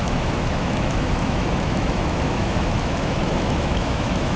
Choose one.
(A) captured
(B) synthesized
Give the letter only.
B